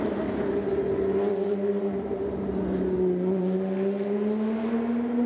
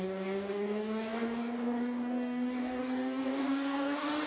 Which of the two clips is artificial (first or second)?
second